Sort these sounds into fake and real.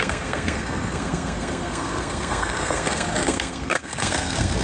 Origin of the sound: fake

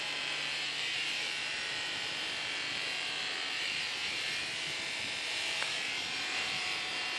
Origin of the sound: fake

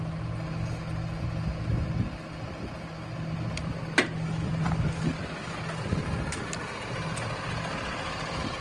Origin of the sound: real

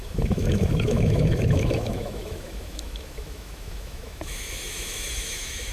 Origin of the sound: fake